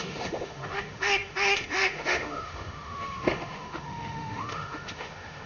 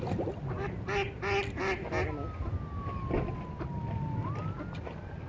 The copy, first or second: first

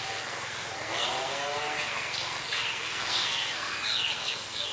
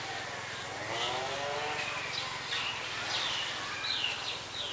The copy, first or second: first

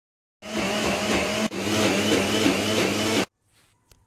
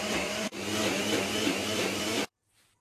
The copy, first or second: second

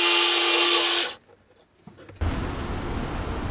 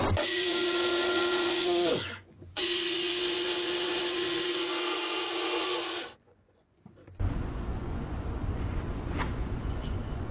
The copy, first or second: second